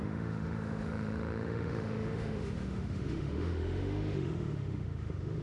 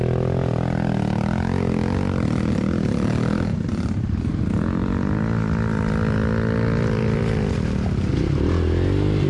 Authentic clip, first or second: second